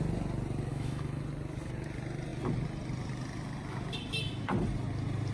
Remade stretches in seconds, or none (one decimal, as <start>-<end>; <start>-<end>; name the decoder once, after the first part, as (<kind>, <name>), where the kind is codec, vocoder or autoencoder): 0.7-1.2 (autoencoder, DAC-VAE)